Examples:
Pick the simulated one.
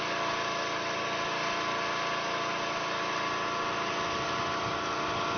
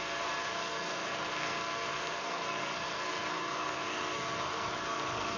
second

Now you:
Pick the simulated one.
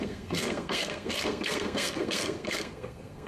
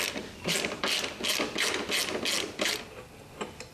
first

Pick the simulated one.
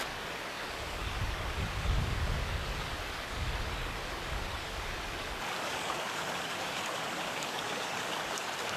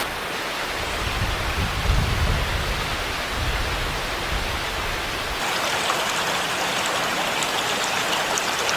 first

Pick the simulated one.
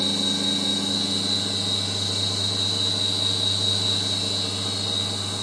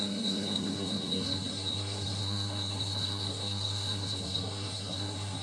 second